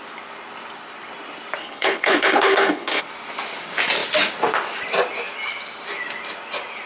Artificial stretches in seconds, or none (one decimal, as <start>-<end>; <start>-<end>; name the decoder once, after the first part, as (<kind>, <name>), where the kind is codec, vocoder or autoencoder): 1.6-3.0 (codec, HILCodec)